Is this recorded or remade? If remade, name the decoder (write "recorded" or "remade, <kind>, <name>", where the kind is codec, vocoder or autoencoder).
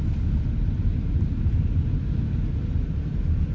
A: recorded